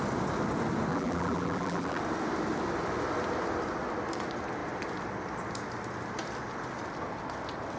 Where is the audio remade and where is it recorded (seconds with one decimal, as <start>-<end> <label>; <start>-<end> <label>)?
0.0-0.9 recorded; 0.9-2.0 remade; 2.0-7.8 recorded